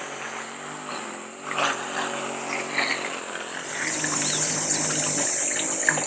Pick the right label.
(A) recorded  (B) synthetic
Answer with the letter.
A